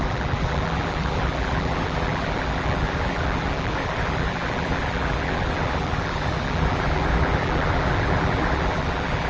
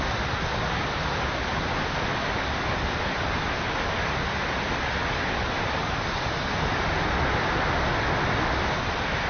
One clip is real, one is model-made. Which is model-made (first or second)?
first